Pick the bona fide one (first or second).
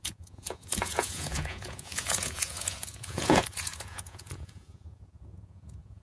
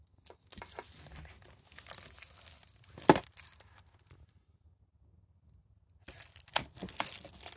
second